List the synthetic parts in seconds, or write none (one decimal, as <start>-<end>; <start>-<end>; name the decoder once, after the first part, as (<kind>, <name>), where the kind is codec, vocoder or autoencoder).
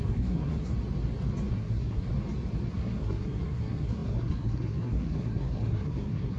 0.0-0.7 (codec, SNAC); 1.5-2.1; 2.7-6.4